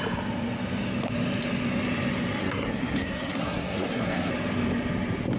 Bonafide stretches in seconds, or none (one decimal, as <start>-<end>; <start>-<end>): 0.0-2.4; 4.3-5.4